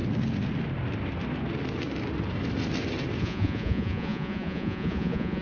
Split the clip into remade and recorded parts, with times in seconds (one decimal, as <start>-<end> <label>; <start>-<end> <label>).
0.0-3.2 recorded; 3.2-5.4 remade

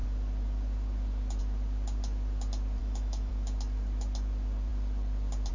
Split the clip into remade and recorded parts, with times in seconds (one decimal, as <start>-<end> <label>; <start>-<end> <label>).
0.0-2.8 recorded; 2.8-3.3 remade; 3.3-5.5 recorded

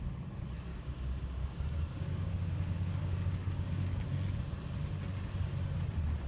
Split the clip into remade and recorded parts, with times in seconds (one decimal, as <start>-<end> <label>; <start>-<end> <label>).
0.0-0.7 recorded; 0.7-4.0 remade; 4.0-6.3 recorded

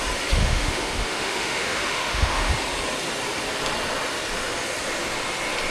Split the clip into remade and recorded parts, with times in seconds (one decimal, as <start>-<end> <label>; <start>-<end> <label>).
0.0-0.4 recorded; 0.4-2.5 remade; 2.5-5.7 recorded

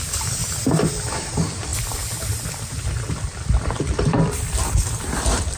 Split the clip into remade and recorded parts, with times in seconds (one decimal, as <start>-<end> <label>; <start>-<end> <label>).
0.0-0.4 remade; 0.4-1.1 recorded; 1.1-1.7 remade; 1.7-3.8 recorded; 3.8-5.6 remade

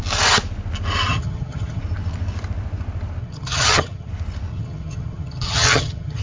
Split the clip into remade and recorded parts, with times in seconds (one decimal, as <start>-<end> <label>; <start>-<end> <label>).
0.0-1.1 recorded; 1.1-1.8 remade; 1.8-3.2 recorded; 3.2-4.1 remade; 4.1-4.5 recorded; 4.5-6.2 remade

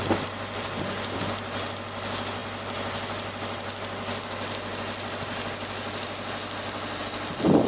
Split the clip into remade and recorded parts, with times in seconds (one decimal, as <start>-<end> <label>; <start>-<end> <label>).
0.0-7.7 recorded

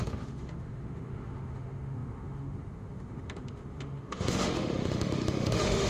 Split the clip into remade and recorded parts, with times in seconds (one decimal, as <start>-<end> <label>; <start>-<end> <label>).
0.0-5.9 remade